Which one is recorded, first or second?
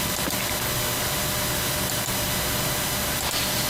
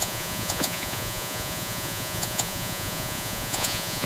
first